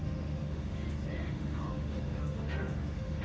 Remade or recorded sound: remade